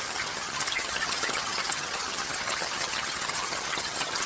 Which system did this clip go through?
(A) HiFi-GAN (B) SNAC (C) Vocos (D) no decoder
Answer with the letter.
A